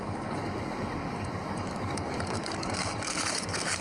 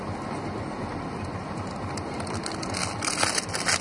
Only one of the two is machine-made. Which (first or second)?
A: first